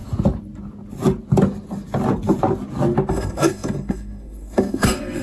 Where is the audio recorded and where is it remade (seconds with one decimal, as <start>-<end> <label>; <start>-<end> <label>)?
0.0-3.1 recorded; 3.1-5.2 remade